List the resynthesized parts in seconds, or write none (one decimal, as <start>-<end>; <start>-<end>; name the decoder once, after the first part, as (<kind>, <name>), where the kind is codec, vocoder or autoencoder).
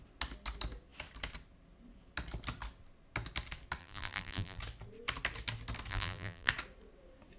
3.8-4.6 (vocoder, BigVGAN v2); 5.9-6.5